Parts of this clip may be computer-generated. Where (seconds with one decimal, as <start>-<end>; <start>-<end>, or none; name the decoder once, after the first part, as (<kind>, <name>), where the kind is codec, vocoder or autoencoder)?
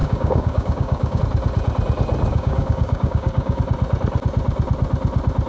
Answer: 0.0-1.2 (codec, DAC); 2.3-3.6